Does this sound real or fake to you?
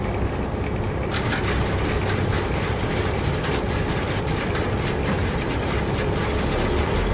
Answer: real